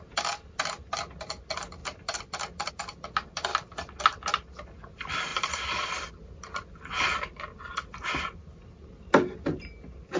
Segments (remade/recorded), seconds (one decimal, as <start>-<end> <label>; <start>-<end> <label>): 0.0-10.2 recorded